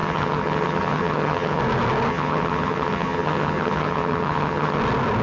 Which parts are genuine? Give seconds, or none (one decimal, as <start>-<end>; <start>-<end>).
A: 1.6-2.1; 4.8-5.2

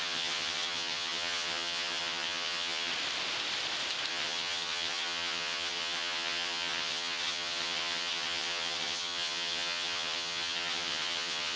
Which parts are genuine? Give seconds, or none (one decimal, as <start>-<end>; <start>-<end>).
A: 2.9-4.1

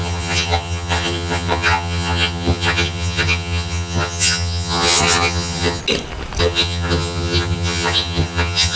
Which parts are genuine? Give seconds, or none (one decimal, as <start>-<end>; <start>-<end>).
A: 5.8-6.4

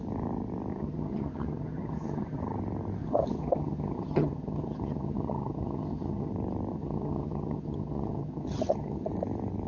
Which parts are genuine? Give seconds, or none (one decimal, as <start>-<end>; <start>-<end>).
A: 0.0-0.7; 2.4-3.0; 6.3-6.7; 9.1-9.7

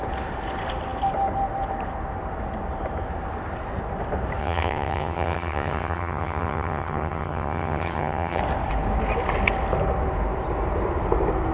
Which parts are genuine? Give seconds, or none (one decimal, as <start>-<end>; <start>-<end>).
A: 0.0-4.4; 8.4-11.5

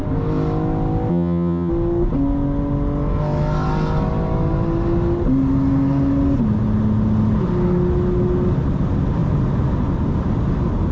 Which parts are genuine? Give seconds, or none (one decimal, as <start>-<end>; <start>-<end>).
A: 0.0-1.1; 1.7-10.9

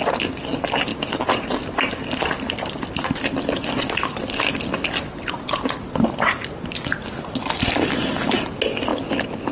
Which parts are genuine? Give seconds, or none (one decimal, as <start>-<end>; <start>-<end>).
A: 0.0-9.5

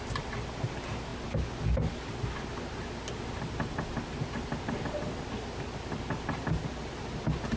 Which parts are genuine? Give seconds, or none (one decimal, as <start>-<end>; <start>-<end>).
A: 0.0-7.6